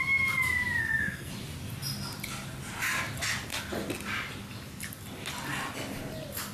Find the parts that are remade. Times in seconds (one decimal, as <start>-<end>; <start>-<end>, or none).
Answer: 0.8-1.3